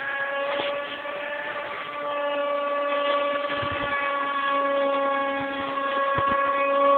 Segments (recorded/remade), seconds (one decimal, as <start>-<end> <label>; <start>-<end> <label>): 0.0-2.4 recorded; 2.4-4.1 remade; 4.1-7.0 recorded